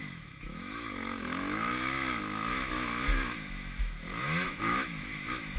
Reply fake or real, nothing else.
fake